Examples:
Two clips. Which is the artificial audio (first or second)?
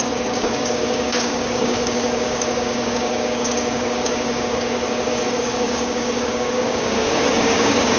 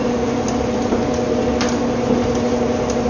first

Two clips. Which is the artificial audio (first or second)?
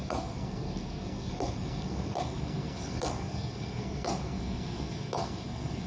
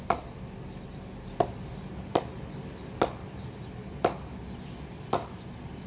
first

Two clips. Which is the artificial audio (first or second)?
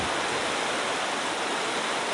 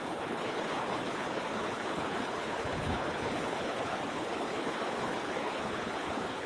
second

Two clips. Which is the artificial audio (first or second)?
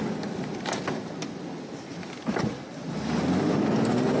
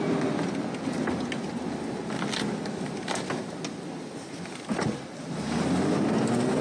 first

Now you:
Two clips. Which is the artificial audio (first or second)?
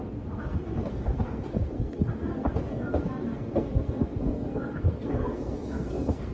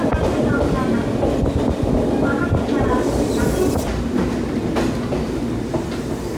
first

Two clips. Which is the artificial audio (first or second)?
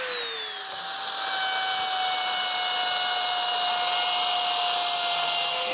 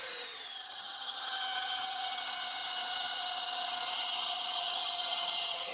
second